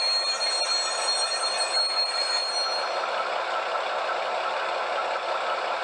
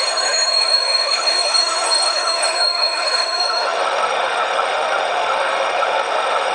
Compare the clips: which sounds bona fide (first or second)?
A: first